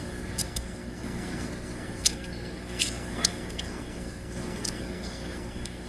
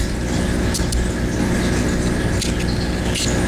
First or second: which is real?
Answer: second